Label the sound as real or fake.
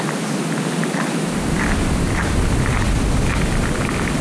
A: real